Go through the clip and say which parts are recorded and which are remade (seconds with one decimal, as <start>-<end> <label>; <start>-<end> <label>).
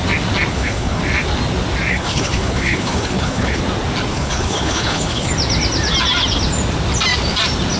0.0-0.5 recorded; 0.5-1.0 remade; 1.0-1.9 recorded; 1.9-3.6 remade; 3.6-4.1 recorded; 4.1-5.3 remade; 5.3-7.8 recorded